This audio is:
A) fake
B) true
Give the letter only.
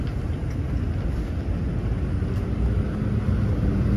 B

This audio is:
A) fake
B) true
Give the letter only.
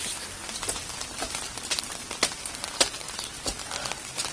B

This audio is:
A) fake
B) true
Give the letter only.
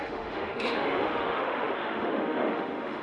A